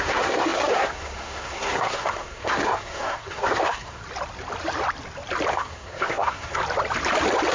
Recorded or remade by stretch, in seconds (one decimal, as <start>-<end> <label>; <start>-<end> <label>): 0.0-4.0 remade; 4.0-5.5 recorded; 5.5-6.6 remade; 6.6-7.5 recorded